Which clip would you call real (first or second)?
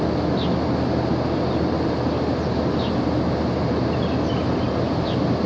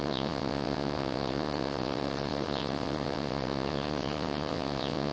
first